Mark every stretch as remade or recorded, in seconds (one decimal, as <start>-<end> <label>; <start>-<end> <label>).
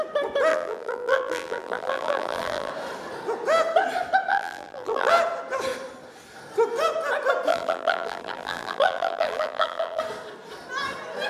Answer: 0.0-0.5 recorded; 0.5-2.7 remade; 2.7-4.3 recorded; 4.3-5.1 remade; 5.1-7.5 recorded; 7.5-10.0 remade; 10.0-11.3 recorded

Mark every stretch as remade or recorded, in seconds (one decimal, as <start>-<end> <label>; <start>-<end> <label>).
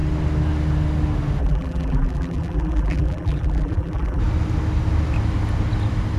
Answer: 0.0-1.4 recorded; 1.4-4.2 remade; 4.2-6.2 recorded